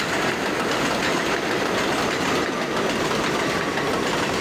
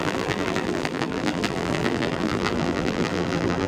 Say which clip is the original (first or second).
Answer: first